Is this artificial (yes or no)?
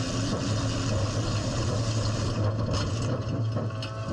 no